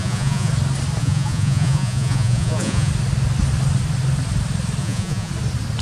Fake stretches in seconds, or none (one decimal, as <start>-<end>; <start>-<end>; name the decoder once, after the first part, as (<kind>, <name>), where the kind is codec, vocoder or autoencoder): 0.0-0.5 (vocoder, Vocos); 1.0-2.9; 4.8-5.3